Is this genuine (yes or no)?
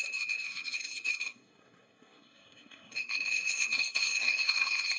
no